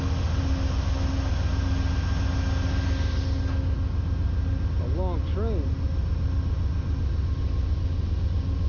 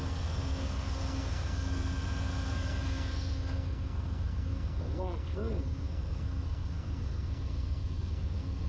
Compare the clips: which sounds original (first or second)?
first